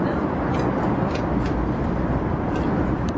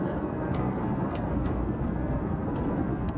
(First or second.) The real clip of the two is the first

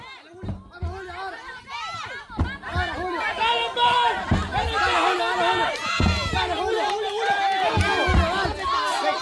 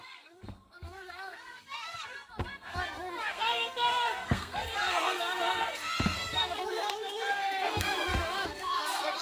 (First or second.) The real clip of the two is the first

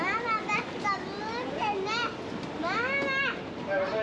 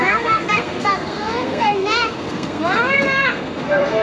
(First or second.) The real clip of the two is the first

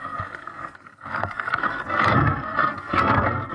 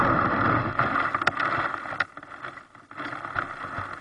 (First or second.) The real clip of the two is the second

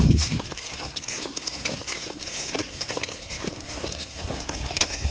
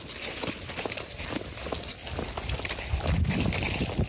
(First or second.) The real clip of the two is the second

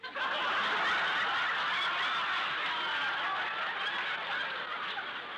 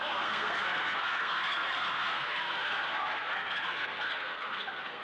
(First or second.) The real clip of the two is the first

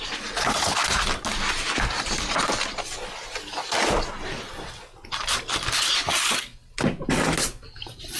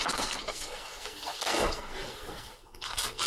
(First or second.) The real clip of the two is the first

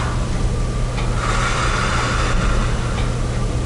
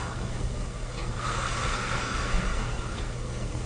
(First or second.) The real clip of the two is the first